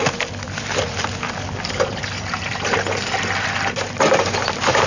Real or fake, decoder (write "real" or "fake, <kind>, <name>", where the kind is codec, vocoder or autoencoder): real